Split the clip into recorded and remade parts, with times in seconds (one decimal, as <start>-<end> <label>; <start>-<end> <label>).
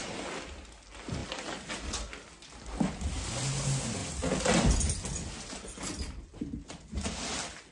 0.0-7.7 recorded